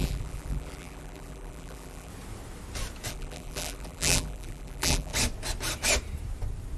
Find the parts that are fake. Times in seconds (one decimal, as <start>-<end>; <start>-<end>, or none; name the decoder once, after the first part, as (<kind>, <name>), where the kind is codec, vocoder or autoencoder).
0.0-2.1 (vocoder, BigVGAN v2); 3.1-5.1